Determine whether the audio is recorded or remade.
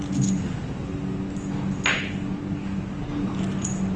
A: recorded